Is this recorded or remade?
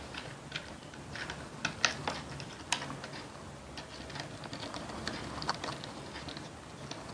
recorded